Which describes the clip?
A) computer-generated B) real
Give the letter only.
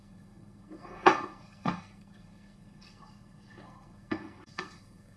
A